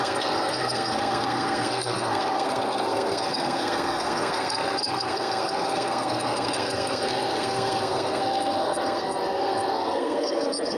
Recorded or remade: remade